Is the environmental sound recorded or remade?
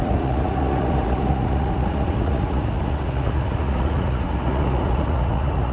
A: remade